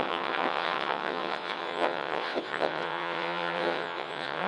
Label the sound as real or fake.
fake